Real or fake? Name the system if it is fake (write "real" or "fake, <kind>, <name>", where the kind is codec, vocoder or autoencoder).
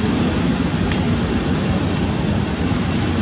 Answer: real